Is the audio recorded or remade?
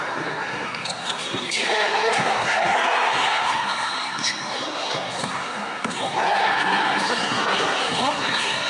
remade